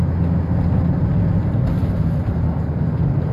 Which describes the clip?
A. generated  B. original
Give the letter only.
B